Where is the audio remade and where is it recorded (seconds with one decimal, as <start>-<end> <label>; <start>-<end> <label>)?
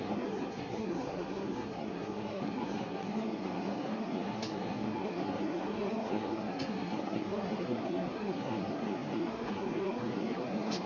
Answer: 0.0-10.9 remade